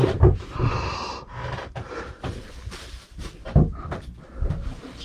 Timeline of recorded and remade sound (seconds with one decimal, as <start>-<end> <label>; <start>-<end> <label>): 0.0-3.0 remade; 3.0-5.0 recorded

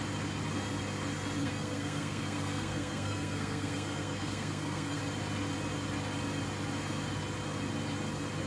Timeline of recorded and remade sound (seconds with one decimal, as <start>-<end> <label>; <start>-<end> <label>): 0.0-1.4 recorded; 1.4-5.0 remade; 5.0-8.5 recorded

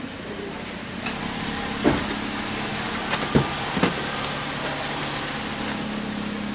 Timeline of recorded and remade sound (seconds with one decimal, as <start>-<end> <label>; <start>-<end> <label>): 0.0-1.2 recorded; 1.2-2.0 remade; 2.0-6.5 recorded

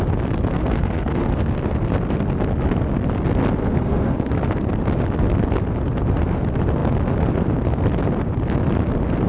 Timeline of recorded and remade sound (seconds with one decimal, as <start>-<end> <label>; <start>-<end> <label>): 0.0-0.6 recorded; 0.6-1.7 remade; 1.7-3.6 recorded; 3.6-4.3 remade; 4.3-9.3 recorded

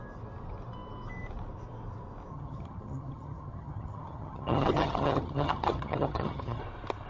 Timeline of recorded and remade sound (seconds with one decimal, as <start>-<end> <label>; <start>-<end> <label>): 0.0-2.3 recorded; 2.3-6.6 remade; 6.6-7.1 recorded

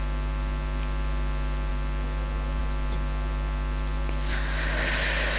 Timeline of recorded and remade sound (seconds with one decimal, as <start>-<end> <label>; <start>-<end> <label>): 0.0-5.4 recorded